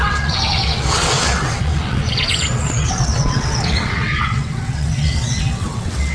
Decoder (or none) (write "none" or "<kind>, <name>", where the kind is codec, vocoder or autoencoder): vocoder, WaveNeXt